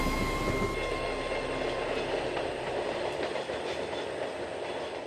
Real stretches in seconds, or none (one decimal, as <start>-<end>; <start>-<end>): 0.0-5.1